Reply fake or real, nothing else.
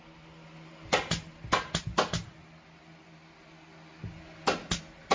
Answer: real